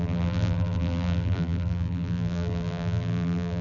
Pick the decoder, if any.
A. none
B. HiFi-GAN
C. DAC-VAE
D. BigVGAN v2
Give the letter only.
D